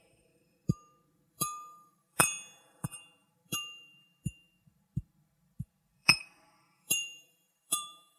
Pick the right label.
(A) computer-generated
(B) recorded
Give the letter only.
A